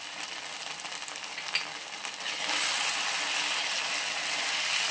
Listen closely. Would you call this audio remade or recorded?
recorded